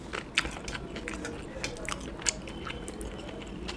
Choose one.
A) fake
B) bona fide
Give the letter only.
B